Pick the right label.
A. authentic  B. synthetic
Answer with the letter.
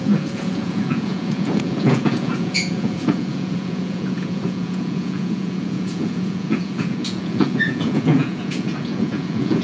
B